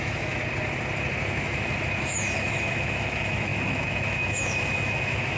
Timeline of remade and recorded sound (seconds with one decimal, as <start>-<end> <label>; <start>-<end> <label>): 0.0-0.4 remade; 0.4-1.2 recorded; 1.2-5.4 remade